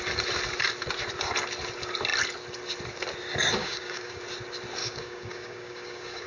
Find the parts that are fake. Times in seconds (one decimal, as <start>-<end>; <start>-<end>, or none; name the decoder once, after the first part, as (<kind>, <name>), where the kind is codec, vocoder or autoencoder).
3.6-4.2 (codec, DAC); 4.8-6.3